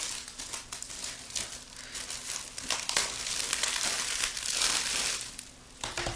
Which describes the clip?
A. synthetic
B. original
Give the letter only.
A